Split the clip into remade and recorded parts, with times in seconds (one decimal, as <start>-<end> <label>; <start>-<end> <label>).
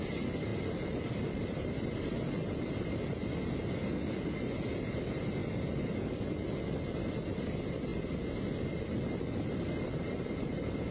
0.0-0.5 recorded; 0.5-2.7 remade; 2.7-10.9 recorded